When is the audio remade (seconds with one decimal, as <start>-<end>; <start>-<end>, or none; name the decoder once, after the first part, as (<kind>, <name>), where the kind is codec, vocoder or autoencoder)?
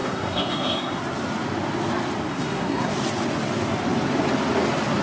0.0-1.0 (codec, SNAC); 2.3-2.9